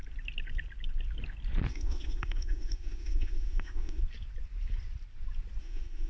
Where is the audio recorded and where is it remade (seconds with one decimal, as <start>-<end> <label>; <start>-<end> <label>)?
0.0-1.7 recorded; 1.7-4.0 remade; 4.0-5.6 recorded; 5.6-6.1 remade